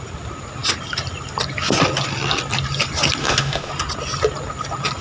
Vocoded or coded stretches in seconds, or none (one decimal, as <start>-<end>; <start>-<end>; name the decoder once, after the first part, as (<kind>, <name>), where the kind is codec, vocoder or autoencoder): 3.2-3.7 (autoencoder, DAC-VAE)